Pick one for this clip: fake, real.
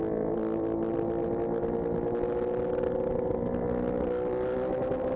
real